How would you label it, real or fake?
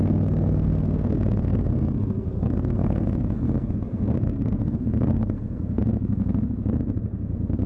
fake